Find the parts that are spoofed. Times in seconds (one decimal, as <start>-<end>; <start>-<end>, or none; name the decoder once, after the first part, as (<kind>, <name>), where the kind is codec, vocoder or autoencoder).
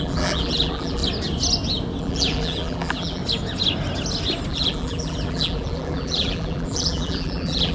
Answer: 0.0-1.0 (vocoder, BigVGAN v2); 2.0-3.2; 4.5-7.7